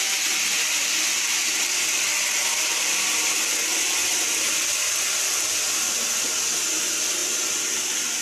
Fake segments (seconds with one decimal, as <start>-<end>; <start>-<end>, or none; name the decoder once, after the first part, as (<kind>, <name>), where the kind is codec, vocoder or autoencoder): none